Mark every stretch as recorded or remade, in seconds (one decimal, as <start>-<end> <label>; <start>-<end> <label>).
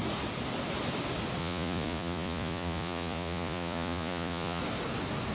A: 0.0-1.4 recorded; 1.4-4.6 remade; 4.6-5.3 recorded